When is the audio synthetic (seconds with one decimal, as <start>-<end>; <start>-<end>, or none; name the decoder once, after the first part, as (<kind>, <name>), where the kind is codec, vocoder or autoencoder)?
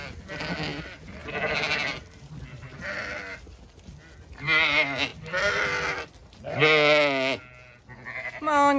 none